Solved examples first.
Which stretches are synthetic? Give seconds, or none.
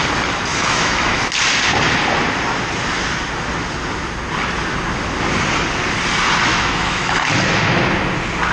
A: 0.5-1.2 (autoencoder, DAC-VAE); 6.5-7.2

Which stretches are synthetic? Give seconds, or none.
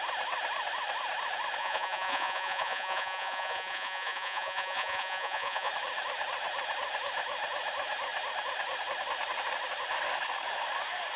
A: 1.6-5.7 (vocoder, Vocos)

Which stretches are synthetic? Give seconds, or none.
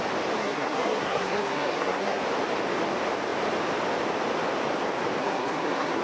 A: 0.4-2.2 (codec, SNAC); 5.2-6.0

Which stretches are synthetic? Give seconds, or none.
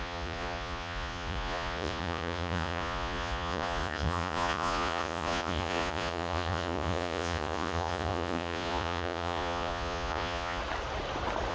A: 0.0-10.6 (vocoder, Vocos)